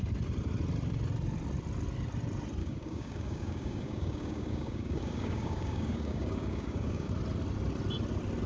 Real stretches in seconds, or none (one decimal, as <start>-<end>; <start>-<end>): 0.0-2.6; 7.1-8.5